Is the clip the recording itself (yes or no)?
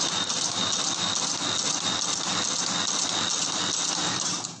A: yes